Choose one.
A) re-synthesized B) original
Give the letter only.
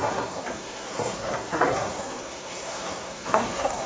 A